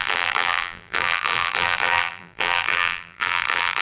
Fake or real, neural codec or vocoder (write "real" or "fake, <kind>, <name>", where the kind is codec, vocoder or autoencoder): fake, vocoder, BigVGAN v2